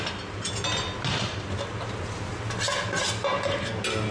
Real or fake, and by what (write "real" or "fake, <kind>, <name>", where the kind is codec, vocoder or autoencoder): real